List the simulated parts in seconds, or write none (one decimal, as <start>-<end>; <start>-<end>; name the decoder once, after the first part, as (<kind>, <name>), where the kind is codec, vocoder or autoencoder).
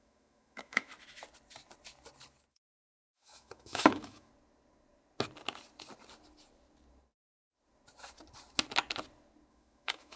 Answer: 0.0-0.9 (autoencoder, DAC-VAE); 2.5-4.3; 9.5-10.2